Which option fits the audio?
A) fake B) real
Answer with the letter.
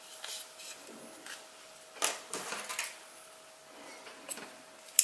B